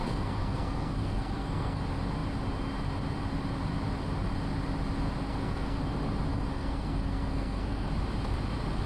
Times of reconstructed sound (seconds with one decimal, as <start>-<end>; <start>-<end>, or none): 0.0-1.8; 5.3-5.8; 6.3-7.9